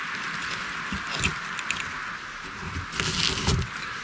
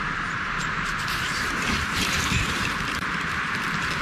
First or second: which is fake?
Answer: second